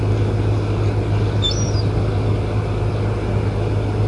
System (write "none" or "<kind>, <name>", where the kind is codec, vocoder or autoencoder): none